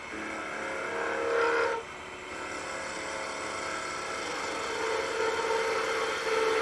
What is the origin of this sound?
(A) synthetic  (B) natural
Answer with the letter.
B